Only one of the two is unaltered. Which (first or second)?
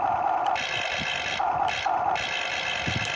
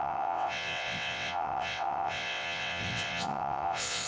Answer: first